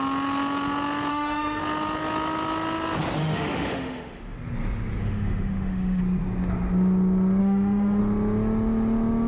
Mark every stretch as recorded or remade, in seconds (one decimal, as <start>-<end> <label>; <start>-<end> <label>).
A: 0.0-1.1 recorded; 1.1-1.6 remade; 1.6-3.2 recorded; 3.2-4.4 remade; 4.4-5.0 recorded; 5.0-6.0 remade; 6.0-7.4 recorded; 7.4-8.0 remade; 8.0-9.3 recorded